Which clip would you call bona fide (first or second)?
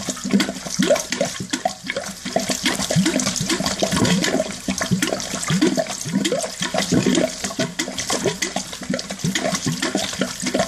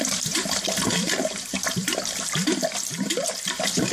first